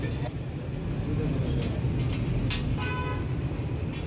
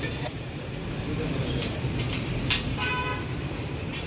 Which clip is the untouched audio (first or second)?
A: first